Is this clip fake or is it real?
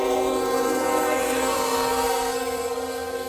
fake